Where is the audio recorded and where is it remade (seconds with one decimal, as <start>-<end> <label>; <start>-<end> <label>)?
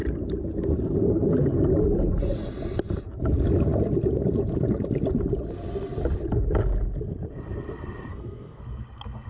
0.0-8.1 recorded; 8.1-8.6 remade; 8.6-9.3 recorded